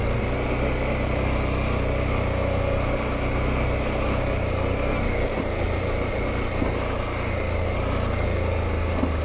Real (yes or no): yes